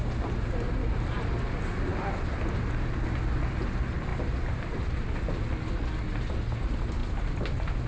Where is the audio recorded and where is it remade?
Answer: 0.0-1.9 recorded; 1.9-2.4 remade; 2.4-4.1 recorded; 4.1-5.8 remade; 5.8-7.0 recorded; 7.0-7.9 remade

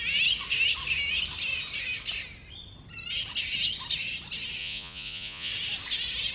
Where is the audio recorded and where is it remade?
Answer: 0.0-4.6 recorded; 4.6-5.5 remade; 5.5-6.3 recorded

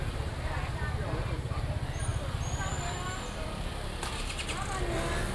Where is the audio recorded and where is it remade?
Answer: 0.0-5.3 recorded